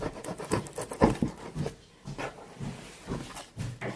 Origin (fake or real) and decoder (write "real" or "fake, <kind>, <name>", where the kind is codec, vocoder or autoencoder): real